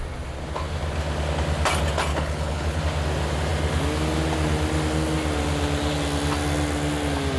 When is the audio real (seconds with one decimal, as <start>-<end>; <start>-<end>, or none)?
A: 0.0-2.1; 2.8-7.4